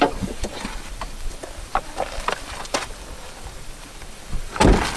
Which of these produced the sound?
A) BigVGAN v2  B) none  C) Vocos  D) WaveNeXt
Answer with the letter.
A